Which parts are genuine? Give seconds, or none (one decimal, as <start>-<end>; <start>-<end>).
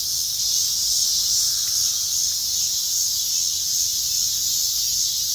0.0-5.3